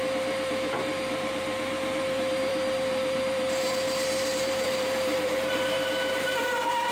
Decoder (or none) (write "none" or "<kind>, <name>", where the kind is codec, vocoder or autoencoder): vocoder, BigVGAN v2